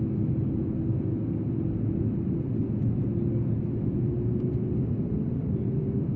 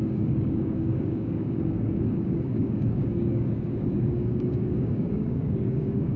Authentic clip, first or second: first